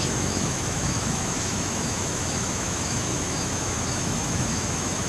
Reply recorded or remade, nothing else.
remade